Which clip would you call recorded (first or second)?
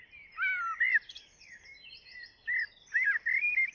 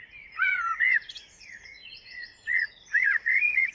first